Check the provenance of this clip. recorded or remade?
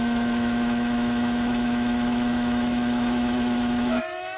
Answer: remade